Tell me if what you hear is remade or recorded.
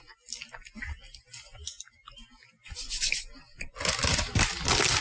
recorded